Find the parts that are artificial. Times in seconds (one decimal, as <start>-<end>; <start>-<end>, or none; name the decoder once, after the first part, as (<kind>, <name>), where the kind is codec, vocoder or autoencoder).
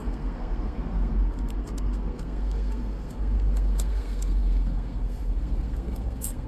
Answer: 0.0-6.5 (codec, SNAC)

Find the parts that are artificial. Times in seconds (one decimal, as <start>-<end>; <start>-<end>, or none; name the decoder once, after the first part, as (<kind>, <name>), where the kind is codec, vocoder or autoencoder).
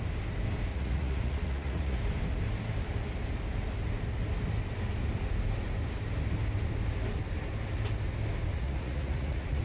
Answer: 0.7-2.0 (vocoder, Vocos); 8.5-9.6